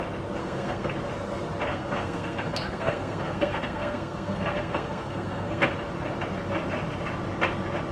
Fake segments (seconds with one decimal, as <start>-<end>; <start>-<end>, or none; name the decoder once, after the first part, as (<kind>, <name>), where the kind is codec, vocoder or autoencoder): 0.4-0.9 (codec, SNAC); 1.7-5.7